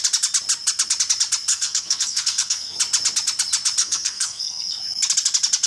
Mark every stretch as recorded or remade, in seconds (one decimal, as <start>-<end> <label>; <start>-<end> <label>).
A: 0.0-1.5 recorded; 1.5-2.8 remade; 2.8-3.8 recorded; 3.8-4.8 remade; 4.8-5.7 recorded